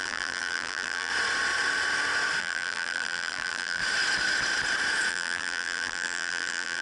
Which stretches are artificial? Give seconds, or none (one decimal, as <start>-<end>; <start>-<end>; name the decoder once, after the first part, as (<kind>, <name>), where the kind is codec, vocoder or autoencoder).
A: 0.0-1.1 (vocoder, BigVGAN v2); 2.4-3.8; 5.1-6.8